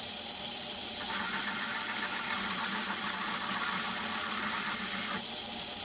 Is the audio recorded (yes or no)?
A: no